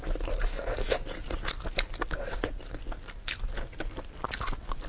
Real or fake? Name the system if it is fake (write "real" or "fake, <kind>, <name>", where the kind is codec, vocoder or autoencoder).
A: real